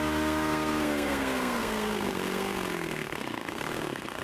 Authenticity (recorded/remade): remade